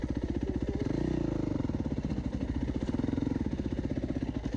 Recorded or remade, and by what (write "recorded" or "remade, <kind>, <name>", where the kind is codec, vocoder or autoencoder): recorded